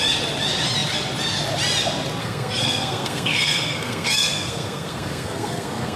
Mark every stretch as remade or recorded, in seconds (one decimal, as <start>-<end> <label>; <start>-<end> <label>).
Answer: 0.0-2.2 recorded; 2.2-6.0 remade